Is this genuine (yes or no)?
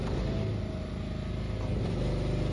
yes